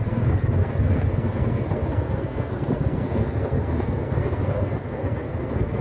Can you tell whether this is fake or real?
fake